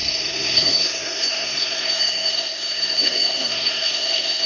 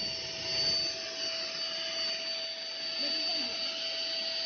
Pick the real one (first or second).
second